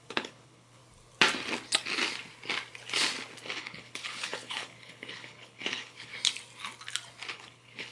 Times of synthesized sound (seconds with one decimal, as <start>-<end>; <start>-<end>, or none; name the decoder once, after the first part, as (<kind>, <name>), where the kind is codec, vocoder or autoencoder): 0.0-0.8 (codec, HILCodec); 3.6-6.1; 7.3-7.9